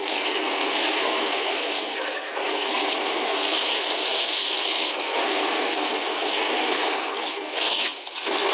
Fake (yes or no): yes